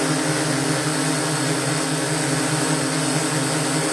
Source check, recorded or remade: recorded